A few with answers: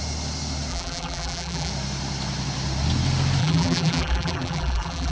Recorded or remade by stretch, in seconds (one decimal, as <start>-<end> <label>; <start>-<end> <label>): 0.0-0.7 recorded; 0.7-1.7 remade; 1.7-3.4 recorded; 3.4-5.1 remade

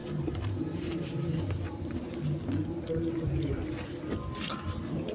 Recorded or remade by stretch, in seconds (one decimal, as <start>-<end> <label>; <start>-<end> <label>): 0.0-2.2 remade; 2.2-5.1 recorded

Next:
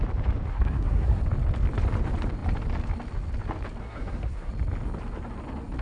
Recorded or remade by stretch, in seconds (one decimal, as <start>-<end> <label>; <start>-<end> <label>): 0.0-0.5 recorded; 0.5-1.2 remade; 1.2-3.8 recorded; 3.8-4.5 remade; 4.5-5.8 recorded

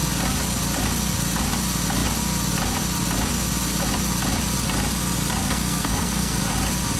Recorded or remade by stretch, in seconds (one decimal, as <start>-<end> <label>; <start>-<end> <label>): 0.0-5.4 recorded; 5.4-6.4 remade; 6.4-7.0 recorded

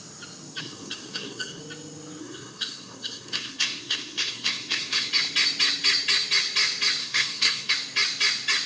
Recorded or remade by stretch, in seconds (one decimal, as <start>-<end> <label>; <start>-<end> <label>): 0.0-0.6 recorded; 0.6-1.6 remade; 1.6-2.2 recorded; 2.2-5.1 remade; 5.1-7.0 recorded; 7.0-7.7 remade; 7.7-8.7 recorded

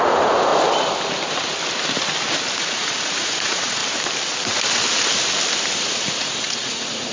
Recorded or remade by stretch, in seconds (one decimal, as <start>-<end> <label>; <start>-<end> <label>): 0.0-0.5 remade; 0.5-2.6 recorded; 2.6-3.8 remade; 3.8-5.8 recorded; 5.8-7.1 remade